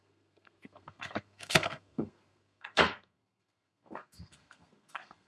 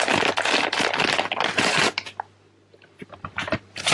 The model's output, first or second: first